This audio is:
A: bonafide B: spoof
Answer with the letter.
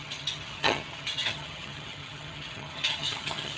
B